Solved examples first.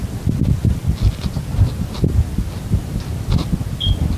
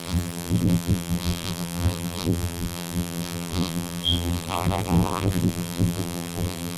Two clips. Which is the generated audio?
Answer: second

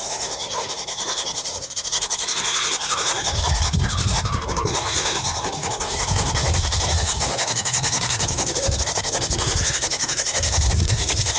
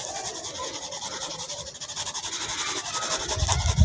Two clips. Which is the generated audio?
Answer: first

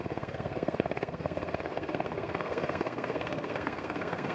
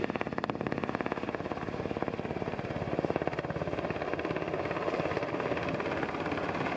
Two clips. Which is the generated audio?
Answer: first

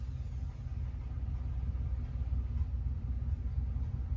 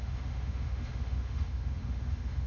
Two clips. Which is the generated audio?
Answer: second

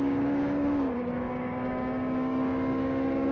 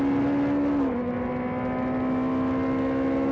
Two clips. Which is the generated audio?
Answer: first